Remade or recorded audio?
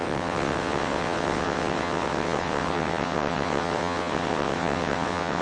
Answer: remade